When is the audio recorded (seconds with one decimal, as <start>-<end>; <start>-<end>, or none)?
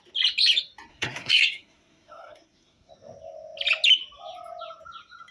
0.0-0.9; 2.9-5.3